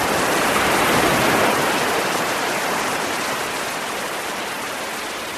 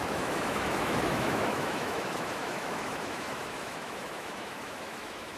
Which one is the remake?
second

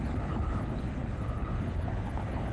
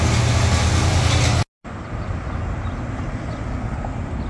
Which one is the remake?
first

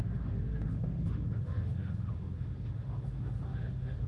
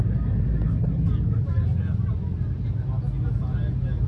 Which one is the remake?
first